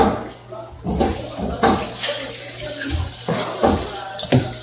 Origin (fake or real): real